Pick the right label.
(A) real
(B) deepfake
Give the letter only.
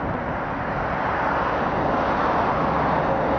A